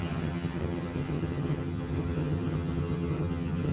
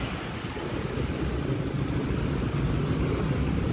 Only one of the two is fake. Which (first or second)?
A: first